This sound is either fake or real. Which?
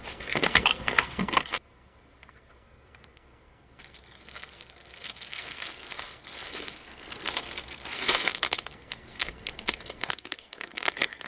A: fake